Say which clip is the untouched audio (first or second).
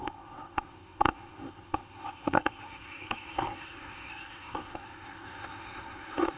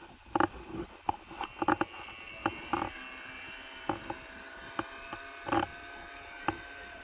second